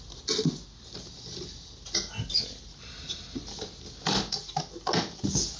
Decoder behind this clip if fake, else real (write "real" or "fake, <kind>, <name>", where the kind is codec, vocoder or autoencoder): real